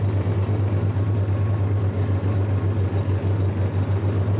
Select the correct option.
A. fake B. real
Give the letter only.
B